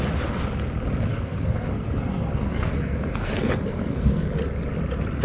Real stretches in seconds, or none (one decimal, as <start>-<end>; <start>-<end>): 0.0-1.1; 4.2-5.2